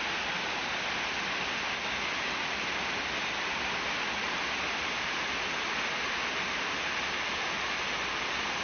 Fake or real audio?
real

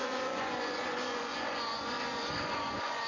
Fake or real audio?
fake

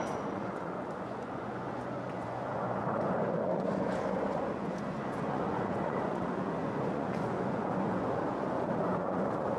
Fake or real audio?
fake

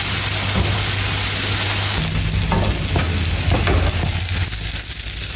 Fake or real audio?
real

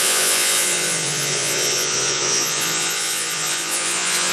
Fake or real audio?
fake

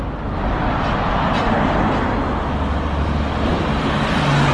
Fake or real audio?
real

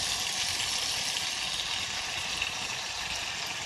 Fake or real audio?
real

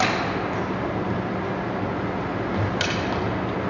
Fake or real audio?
real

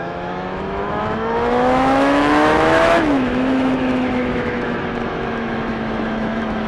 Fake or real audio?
fake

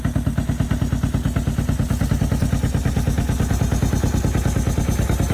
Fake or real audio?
real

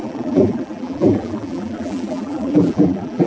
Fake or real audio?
fake